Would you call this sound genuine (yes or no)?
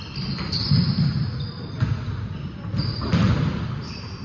yes